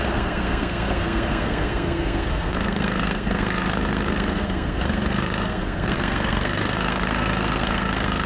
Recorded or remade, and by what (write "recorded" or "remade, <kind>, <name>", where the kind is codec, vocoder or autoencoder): remade, codec, SNAC